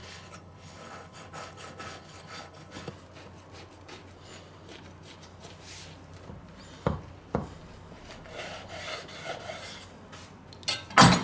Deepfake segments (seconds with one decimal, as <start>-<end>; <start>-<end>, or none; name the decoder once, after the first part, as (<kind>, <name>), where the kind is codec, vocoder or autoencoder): 0.0-2.9 (codec, HILCodec)